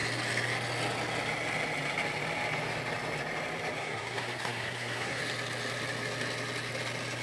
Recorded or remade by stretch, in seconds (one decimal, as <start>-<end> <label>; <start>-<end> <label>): 0.0-3.8 recorded; 3.8-5.2 remade; 5.2-7.2 recorded